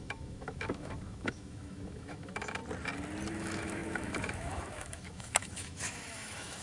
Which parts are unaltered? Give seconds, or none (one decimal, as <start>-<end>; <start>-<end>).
2.6-3.3